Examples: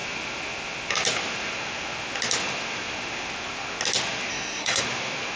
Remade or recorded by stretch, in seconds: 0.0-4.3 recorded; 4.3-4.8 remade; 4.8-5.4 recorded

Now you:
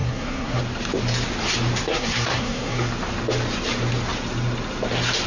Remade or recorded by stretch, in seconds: 0.0-0.6 remade; 0.6-1.9 recorded; 1.9-2.9 remade; 2.9-5.3 recorded

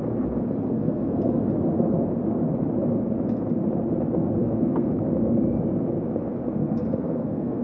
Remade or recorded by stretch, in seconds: 0.0-0.7 recorded; 0.7-1.4 remade; 1.4-4.4 recorded; 4.4-5.0 remade; 5.0-6.6 recorded; 6.6-7.6 remade

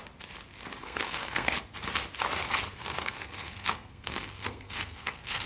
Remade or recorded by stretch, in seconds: 0.0-0.8 recorded; 0.8-1.5 remade; 1.5-2.7 recorded; 2.7-5.5 remade

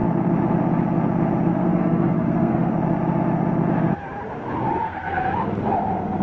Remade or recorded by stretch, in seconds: 0.0-1.5 recorded; 1.5-2.7 remade; 2.7-4.7 recorded; 4.7-5.3 remade; 5.3-6.2 recorded

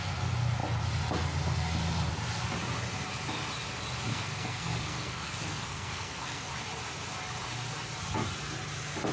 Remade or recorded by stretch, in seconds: 0.0-4.1 recorded; 4.1-6.5 remade; 6.5-9.1 recorded